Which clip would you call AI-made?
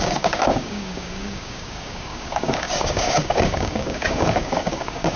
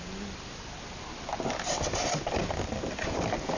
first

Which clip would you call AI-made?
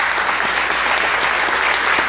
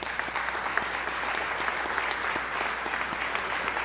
second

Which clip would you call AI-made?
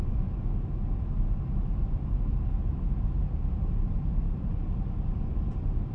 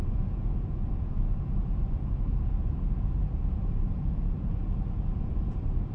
second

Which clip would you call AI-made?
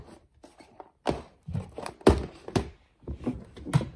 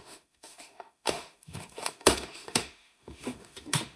second